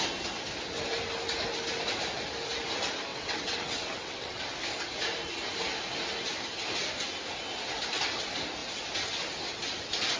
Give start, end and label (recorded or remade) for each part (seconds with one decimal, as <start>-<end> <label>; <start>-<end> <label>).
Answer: 0.0-3.1 recorded; 3.1-4.4 remade; 4.4-10.2 recorded